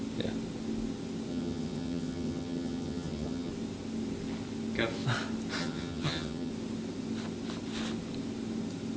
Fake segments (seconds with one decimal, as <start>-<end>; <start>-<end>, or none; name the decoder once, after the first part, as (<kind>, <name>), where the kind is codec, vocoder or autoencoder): 1.3-3.5 (vocoder, HiFi-GAN); 5.6-6.5